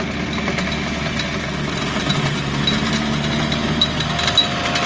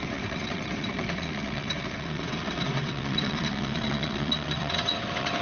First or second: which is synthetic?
second